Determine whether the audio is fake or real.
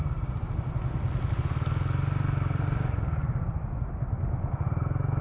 real